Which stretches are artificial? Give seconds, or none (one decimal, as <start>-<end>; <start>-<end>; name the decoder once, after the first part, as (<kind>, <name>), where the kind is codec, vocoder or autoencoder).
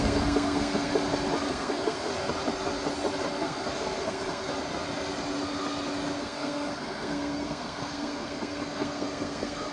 0.0-0.9 (codec, SNAC); 1.4-2.1; 3.3-4.5; 6.2-9.7